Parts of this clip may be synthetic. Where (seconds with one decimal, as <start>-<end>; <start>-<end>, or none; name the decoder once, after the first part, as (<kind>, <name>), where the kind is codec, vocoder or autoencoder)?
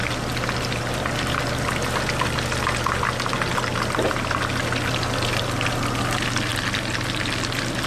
none